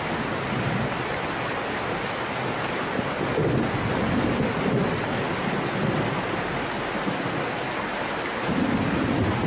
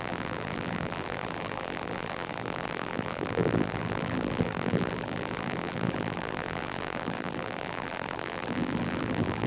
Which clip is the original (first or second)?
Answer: first